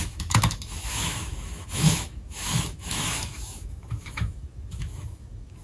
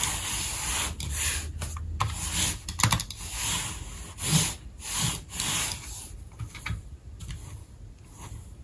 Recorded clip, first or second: second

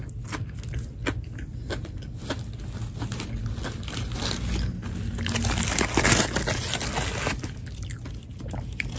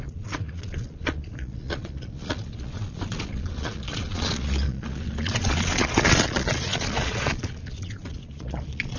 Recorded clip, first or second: first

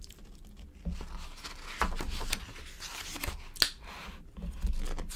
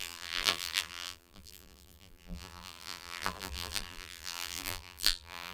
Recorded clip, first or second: first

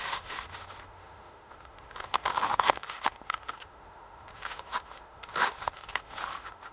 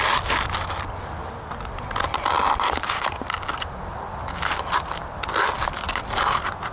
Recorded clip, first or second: second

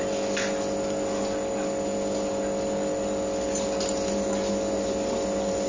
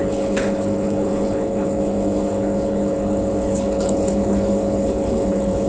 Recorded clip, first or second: first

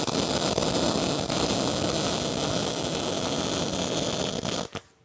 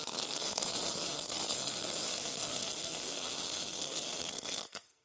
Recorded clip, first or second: first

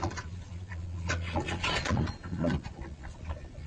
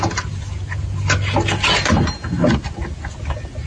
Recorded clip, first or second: second